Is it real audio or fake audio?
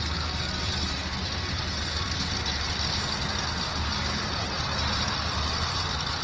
real